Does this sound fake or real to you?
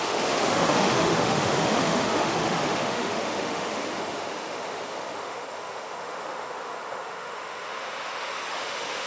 fake